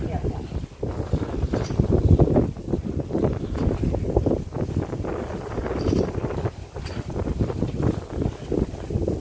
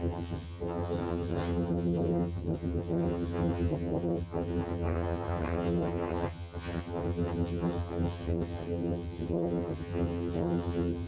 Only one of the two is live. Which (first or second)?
first